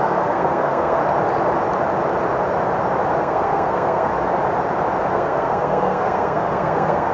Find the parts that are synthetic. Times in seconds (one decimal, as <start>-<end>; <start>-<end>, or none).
0.0-1.0; 3.2-4.1; 5.1-7.1